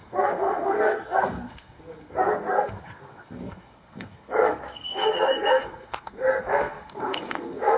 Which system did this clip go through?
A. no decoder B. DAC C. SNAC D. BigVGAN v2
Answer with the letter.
C